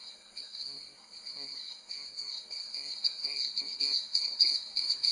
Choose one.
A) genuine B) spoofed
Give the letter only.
B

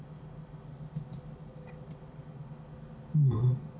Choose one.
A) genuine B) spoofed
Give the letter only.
A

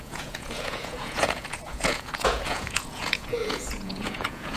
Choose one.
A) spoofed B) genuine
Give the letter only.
A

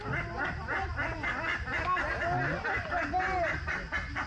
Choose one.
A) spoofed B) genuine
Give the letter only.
B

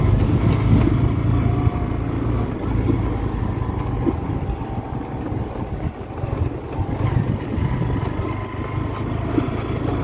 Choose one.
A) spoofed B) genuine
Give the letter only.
B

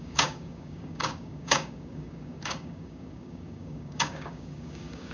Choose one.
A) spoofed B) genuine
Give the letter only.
A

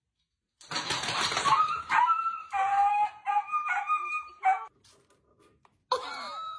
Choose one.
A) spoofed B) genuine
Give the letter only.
B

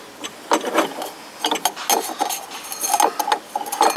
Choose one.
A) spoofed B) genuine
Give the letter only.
B